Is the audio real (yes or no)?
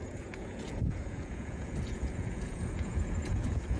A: no